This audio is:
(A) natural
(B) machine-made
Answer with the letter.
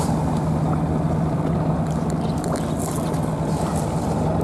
A